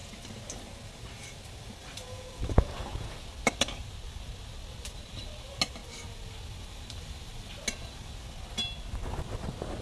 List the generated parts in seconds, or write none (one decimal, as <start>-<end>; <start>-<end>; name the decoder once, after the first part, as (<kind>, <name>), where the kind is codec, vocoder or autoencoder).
2.0-3.3 (vocoder, Vocos)